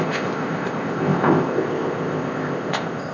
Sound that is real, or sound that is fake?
fake